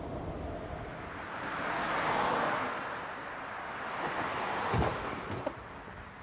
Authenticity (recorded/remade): recorded